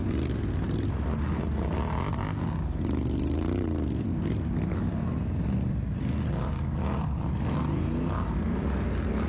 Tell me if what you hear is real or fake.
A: real